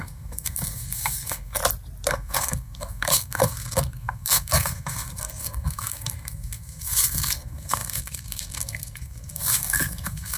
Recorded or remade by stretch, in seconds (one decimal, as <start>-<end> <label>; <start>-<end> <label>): 0.0-1.6 remade; 1.6-2.1 recorded; 2.1-10.4 remade